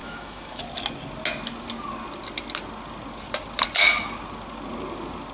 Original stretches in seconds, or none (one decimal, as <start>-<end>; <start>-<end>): 0.6-5.3

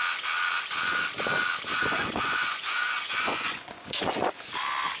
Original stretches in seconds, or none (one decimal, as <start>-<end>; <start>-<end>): 0.0-1.7; 4.5-5.0

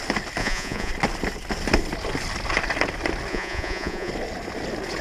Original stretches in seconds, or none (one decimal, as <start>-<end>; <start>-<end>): 0.0-0.4; 0.9-3.3; 4.1-5.0

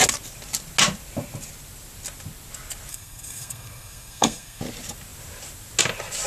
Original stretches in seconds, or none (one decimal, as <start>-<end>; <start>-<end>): 0.0-2.9; 4.6-6.3

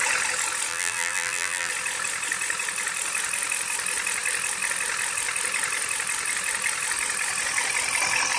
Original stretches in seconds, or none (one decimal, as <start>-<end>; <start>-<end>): 0.0-0.7; 1.7-8.4

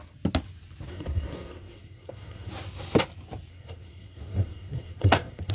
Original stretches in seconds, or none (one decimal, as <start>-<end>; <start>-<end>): 0.0-0.9; 2.5-3.5

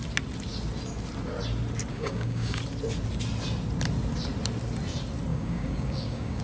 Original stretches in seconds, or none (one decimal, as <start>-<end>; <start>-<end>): 0.0-1.9; 2.6-5.3

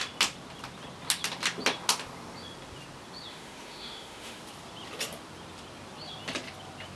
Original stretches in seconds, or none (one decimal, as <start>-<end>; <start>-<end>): 0.0-3.3; 4.4-7.0